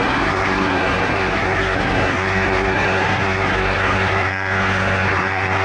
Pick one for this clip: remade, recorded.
remade